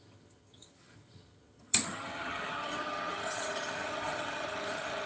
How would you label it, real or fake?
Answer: fake